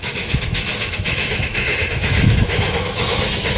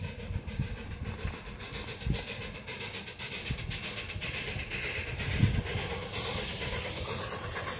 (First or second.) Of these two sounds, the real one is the second